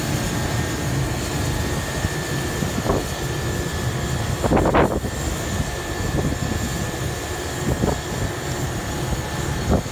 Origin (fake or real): real